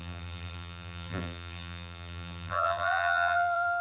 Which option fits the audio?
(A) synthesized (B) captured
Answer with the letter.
A